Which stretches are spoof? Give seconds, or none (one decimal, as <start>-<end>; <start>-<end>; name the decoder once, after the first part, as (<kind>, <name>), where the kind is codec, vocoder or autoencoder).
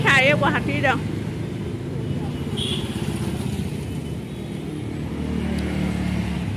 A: none